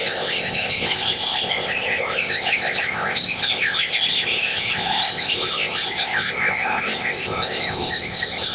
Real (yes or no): no